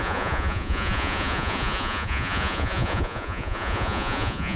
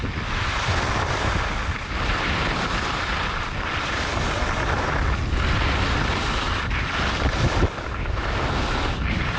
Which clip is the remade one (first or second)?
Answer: first